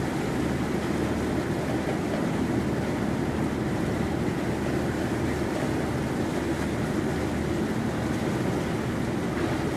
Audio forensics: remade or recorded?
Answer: recorded